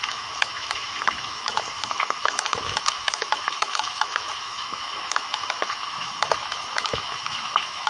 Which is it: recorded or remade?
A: remade